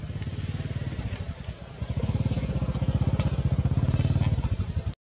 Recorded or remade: recorded